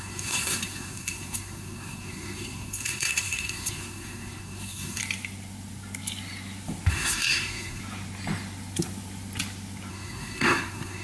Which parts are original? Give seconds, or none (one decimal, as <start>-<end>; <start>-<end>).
5.0-6.9; 7.8-9.9